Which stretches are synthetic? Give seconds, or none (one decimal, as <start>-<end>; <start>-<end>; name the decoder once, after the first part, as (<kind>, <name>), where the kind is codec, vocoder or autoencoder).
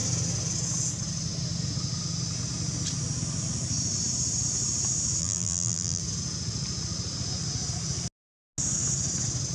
5.2-6.0 (vocoder, BigVGAN v2)